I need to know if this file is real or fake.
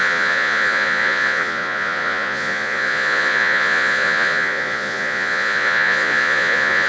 fake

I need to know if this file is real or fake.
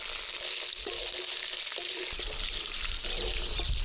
real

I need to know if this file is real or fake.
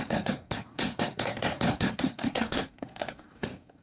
fake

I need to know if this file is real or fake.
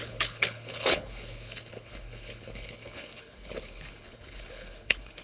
fake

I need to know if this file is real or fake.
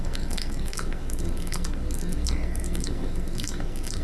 fake